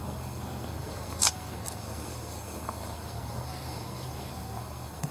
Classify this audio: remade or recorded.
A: remade